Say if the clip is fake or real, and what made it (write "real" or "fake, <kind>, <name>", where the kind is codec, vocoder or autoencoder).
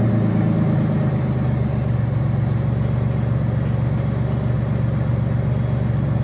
real